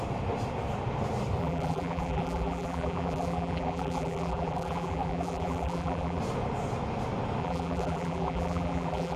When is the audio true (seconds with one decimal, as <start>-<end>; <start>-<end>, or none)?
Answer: 0.0-1.4; 6.2-7.4

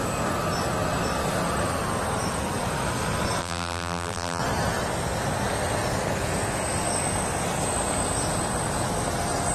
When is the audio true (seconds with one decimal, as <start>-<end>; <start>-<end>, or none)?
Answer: 0.0-3.4; 4.4-9.5

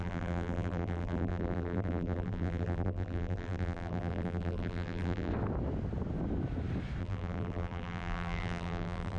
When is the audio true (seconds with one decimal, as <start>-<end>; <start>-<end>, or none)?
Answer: 5.3-7.0

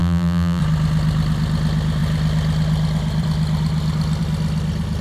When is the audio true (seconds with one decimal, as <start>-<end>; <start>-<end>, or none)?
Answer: 0.6-5.0